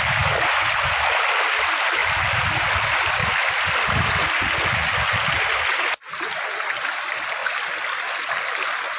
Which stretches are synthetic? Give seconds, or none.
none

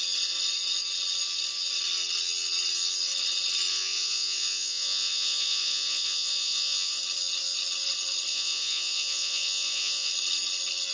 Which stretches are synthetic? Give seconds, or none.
3.7-7.0 (vocoder, Vocos); 8.3-10.1

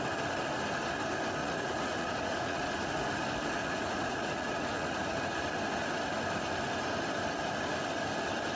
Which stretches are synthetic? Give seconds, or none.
1.4-2.9 (vocoder, Vocos); 3.6-5.4

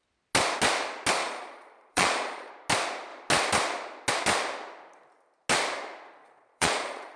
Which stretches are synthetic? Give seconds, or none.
1.2-2.5 (vocoder, Vocos); 6.2-7.2

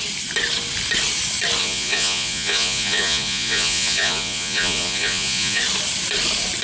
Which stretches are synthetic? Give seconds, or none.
1.6-5.6 (vocoder, Vocos)